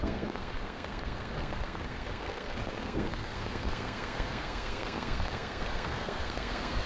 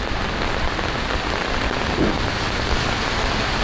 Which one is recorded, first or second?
second